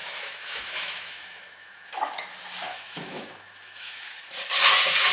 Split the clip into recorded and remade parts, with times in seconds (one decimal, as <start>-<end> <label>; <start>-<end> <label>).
0.0-1.9 remade; 1.9-2.7 recorded; 2.7-4.2 remade; 4.2-5.1 recorded